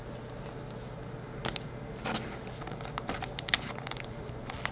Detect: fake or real real